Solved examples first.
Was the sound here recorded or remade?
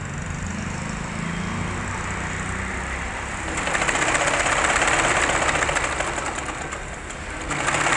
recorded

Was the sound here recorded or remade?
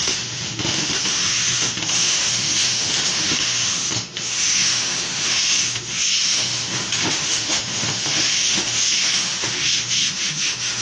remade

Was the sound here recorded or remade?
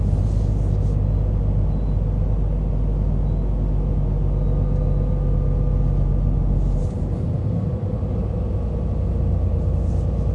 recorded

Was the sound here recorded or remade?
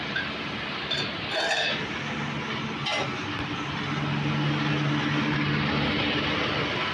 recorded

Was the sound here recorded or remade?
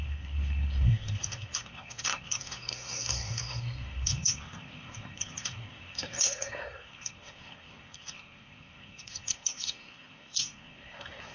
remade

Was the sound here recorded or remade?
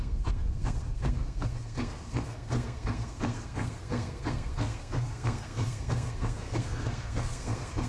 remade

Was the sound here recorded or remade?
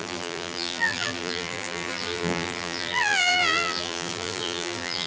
remade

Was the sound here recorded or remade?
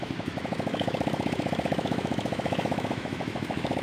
remade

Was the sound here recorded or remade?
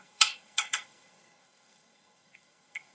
remade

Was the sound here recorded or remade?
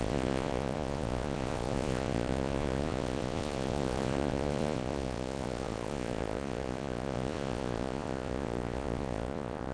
remade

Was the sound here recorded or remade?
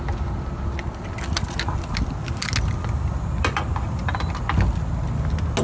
recorded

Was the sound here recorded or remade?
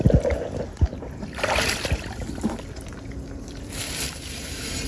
recorded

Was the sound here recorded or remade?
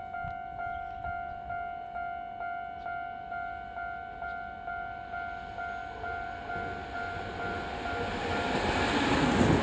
recorded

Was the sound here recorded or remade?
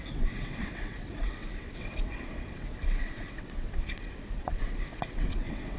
remade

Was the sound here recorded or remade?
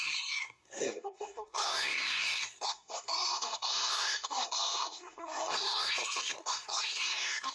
remade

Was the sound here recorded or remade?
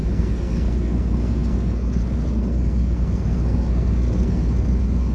remade